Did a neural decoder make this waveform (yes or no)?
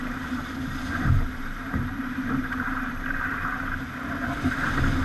yes